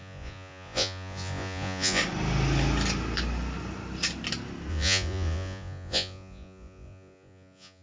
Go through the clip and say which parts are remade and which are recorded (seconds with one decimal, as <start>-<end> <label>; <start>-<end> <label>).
0.0-2.0 remade; 2.0-4.7 recorded; 4.7-7.8 remade